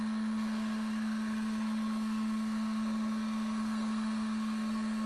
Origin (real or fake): fake